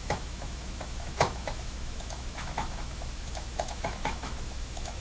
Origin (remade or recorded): remade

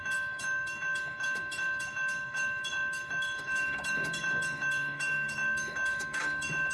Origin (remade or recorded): remade